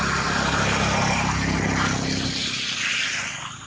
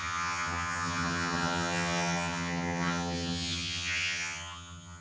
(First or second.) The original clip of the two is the first